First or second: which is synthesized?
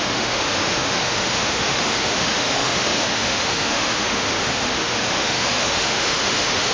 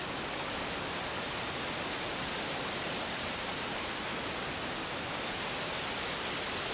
first